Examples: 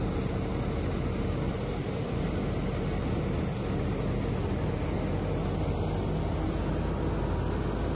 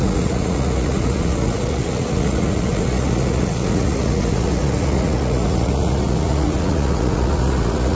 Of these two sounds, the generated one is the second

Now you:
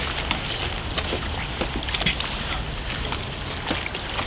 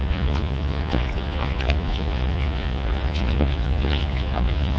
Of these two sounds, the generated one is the second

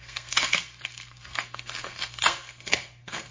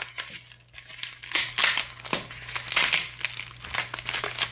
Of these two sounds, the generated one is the first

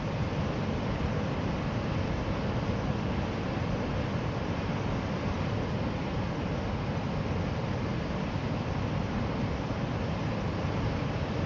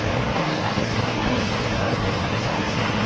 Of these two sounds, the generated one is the second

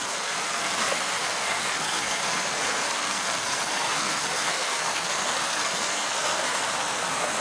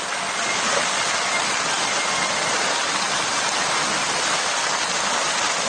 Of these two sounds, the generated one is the first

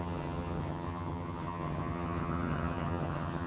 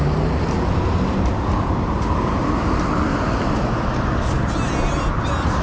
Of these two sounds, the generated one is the first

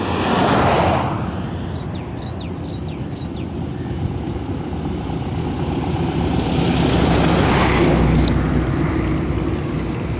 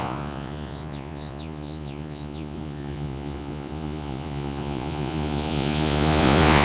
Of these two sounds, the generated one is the second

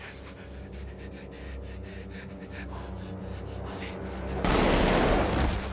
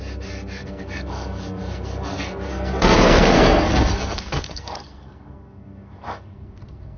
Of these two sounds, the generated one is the second